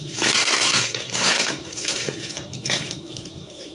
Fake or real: fake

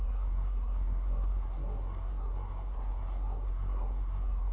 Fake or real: fake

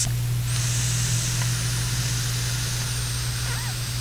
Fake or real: real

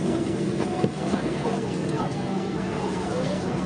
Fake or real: fake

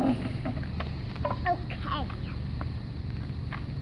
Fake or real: real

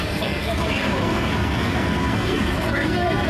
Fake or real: fake